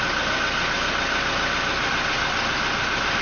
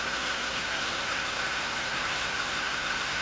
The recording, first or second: first